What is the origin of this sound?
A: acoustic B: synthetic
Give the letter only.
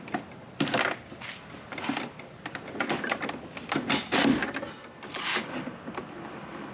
A